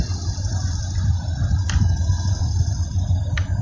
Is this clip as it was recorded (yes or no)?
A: no